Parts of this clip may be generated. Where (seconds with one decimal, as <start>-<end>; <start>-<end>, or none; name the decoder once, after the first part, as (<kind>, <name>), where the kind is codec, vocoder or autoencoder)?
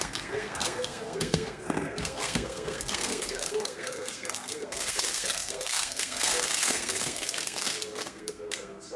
0.0-9.0 (codec, SNAC)